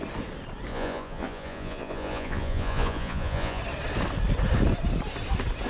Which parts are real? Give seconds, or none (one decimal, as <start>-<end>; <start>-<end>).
0.0-0.7; 3.6-5.7